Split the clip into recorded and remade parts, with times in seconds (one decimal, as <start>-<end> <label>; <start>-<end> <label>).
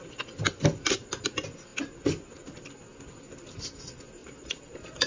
0.0-4.2 recorded; 4.2-5.1 remade